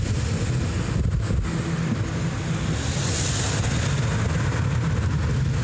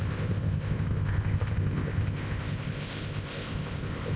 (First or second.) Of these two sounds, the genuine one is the first